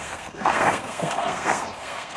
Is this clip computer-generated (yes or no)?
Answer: yes